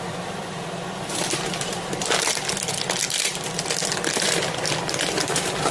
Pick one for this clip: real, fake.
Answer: fake